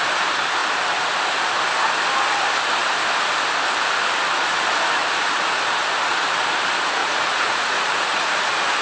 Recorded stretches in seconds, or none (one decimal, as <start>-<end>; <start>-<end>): 0.0-7.0; 8.3-8.8